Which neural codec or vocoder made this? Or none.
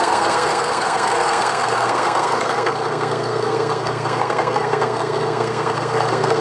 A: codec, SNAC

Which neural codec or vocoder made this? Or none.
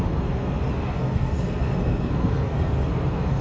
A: codec, SNAC